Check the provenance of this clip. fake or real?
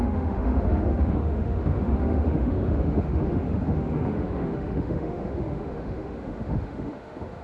fake